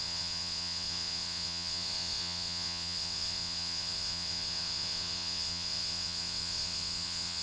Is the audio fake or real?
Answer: fake